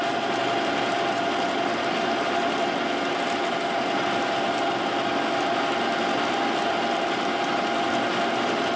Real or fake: real